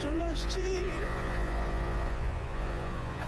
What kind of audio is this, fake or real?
fake